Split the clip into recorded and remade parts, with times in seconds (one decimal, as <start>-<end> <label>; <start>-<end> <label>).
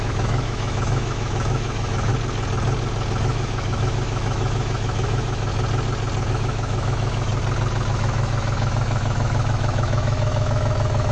0.0-2.1 remade; 2.1-3.2 recorded; 3.2-5.5 remade; 5.5-6.3 recorded; 6.3-7.3 remade; 7.3-7.9 recorded; 7.9-11.1 remade